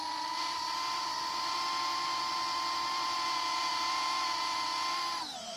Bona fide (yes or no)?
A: no